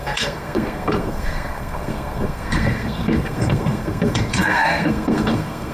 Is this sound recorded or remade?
remade